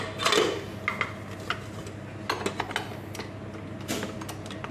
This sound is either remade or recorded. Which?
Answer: recorded